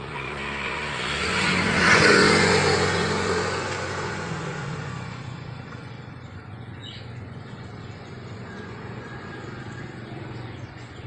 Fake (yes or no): yes